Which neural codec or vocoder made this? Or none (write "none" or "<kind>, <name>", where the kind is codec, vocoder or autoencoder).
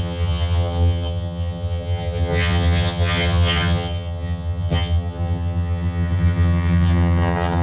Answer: vocoder, HiFi-GAN